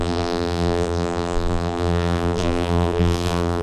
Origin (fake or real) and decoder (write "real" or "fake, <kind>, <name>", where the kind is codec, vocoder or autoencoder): fake, vocoder, BigVGAN v2